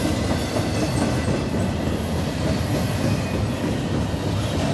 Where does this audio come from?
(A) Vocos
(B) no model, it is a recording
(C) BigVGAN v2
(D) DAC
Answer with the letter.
B